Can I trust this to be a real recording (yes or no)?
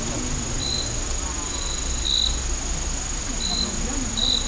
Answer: yes